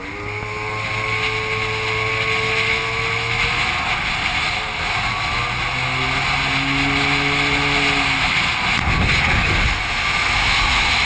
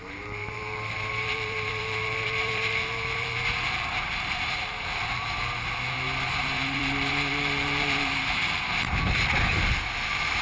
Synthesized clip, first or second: second